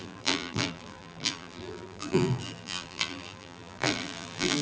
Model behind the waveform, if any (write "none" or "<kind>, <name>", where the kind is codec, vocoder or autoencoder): vocoder, BigVGAN v2